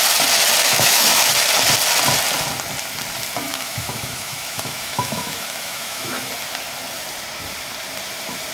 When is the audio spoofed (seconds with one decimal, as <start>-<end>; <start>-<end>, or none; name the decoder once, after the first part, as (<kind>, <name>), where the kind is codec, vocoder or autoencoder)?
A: 0.6-1.3 (autoencoder, DAC-VAE); 3.5-6.3